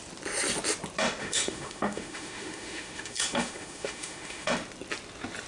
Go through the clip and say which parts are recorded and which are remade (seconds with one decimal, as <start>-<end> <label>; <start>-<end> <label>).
0.0-1.2 recorded; 1.2-4.5 remade; 4.5-5.5 recorded